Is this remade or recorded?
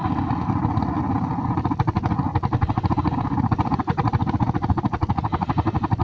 recorded